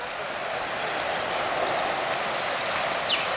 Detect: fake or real real